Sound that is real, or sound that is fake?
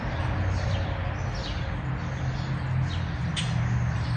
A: real